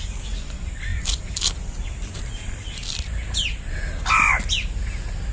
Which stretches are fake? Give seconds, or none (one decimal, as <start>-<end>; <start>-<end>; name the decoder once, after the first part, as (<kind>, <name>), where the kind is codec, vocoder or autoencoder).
none